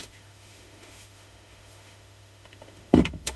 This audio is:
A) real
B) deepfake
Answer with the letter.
B